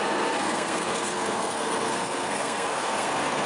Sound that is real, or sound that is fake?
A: fake